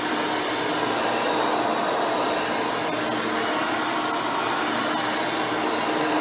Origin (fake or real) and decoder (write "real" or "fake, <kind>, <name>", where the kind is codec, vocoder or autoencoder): real